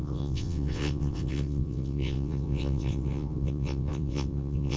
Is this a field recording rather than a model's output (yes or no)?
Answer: no